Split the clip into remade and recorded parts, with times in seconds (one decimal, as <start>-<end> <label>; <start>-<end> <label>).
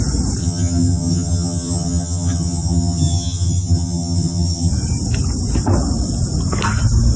0.0-0.4 recorded; 0.4-4.7 remade; 4.7-7.2 recorded